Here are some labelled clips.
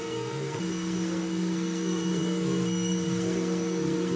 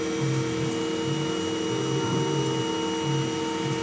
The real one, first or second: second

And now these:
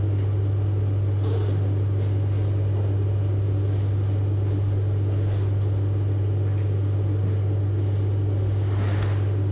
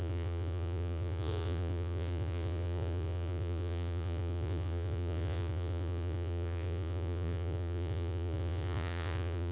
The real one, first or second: first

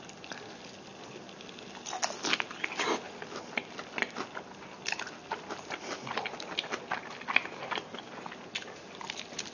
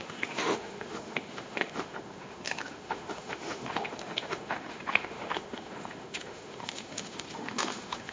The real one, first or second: first